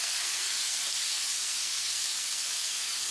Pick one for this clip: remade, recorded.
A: remade